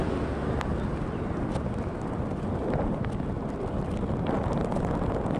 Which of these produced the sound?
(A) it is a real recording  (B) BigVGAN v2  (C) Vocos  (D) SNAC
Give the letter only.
A